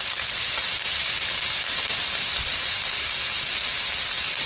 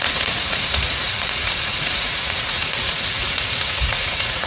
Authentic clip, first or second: first